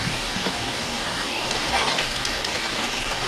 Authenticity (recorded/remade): remade